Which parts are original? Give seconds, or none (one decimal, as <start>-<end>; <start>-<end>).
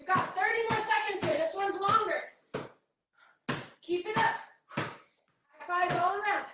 0.0-0.7; 1.3-5.2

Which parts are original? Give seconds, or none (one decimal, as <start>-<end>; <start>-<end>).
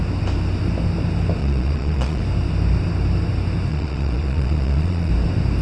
0.0-1.4; 2.2-3.7; 5.1-5.6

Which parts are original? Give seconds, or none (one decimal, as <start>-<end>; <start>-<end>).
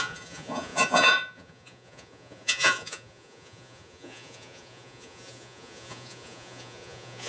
none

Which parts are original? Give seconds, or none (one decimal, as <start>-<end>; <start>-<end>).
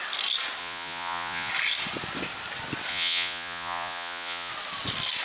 0.0-0.6; 1.5-2.9; 4.5-5.2